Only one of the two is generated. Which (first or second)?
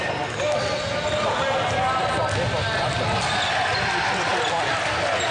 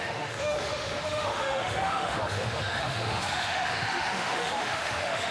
second